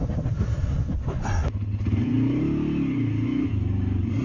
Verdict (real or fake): real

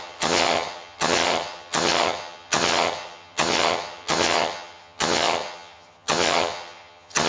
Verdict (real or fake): fake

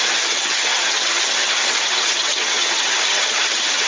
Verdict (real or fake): fake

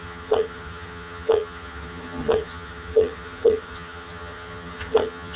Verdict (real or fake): fake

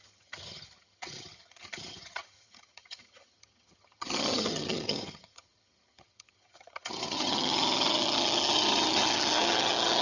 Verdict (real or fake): fake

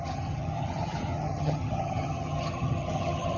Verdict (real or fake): fake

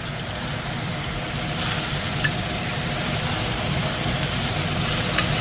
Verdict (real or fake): real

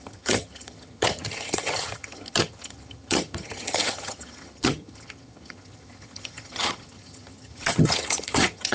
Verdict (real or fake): fake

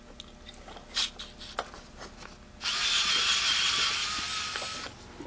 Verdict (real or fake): real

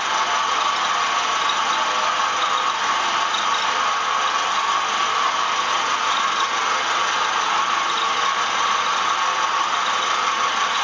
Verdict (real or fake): real